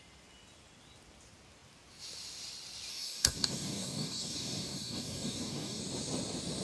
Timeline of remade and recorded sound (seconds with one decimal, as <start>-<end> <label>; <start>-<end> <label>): 0.0-2.9 recorded; 2.9-5.8 remade; 5.8-6.6 recorded

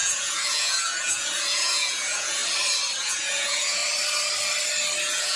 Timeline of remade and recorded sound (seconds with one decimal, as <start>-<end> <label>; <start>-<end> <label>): 0.0-2.4 remade; 2.4-3.0 recorded; 3.0-3.8 remade; 3.8-5.0 recorded; 5.0-5.4 remade

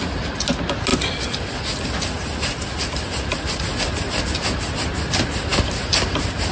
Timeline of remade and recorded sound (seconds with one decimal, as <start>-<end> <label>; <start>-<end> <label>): 0.0-6.5 recorded

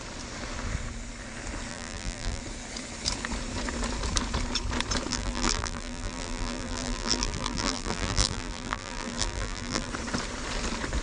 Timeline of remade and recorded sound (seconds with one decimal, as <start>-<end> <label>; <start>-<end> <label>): 0.0-1.7 recorded; 1.7-2.4 remade; 2.4-5.1 recorded; 5.1-9.9 remade; 9.9-11.0 recorded

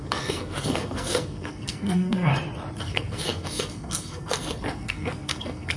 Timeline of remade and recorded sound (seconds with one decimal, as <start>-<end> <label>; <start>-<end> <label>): 0.0-2.3 remade; 2.3-2.8 recorded; 2.8-5.8 remade

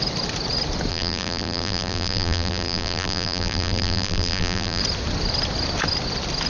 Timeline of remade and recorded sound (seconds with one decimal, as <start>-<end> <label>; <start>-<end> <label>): 0.0-0.9 recorded; 0.9-4.8 remade; 4.8-6.5 recorded

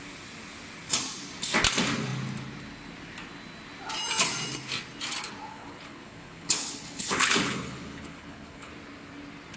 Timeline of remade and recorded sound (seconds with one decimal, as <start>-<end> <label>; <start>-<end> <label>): 0.0-5.4 recorded; 5.4-8.7 remade; 8.7-9.6 recorded